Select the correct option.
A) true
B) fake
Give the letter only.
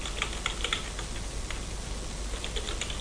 A